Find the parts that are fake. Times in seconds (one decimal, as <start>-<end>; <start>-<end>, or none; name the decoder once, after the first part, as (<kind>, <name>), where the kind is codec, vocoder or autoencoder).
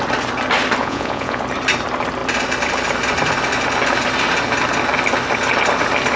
0.8-1.4 (vocoder, Vocos)